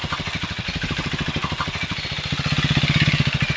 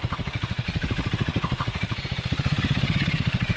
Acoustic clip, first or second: first